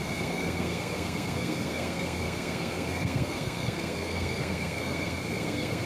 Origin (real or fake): fake